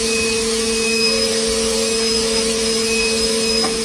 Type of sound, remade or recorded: remade